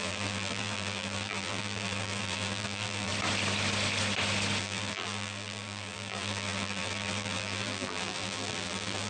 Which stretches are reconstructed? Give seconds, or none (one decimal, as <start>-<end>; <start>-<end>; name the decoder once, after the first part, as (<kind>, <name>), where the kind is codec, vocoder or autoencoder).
0.0-3.1 (vocoder, BigVGAN v2); 4.6-9.1